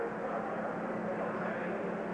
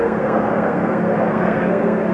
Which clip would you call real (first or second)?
first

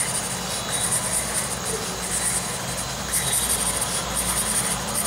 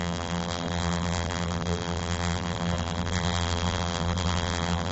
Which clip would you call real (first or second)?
first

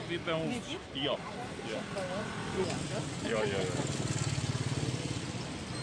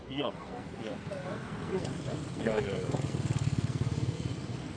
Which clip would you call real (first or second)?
first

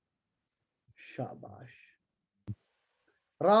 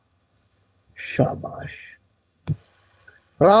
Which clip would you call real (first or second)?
first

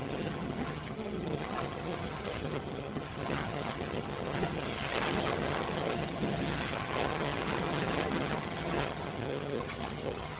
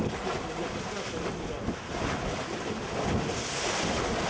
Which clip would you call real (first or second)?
second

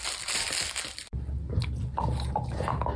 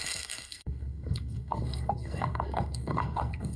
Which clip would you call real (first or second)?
first